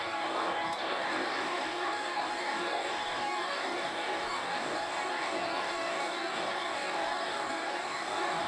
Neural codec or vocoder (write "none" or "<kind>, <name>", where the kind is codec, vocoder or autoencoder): codec, DAC